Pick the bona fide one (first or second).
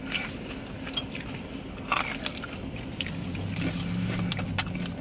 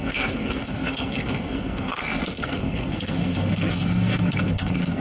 first